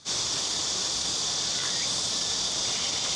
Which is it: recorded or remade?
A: recorded